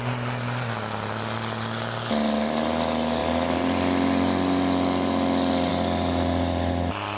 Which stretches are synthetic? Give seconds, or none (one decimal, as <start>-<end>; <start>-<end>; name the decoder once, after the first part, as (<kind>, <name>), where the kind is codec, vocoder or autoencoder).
none